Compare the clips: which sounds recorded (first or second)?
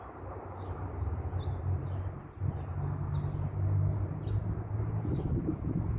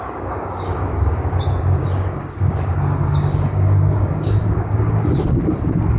first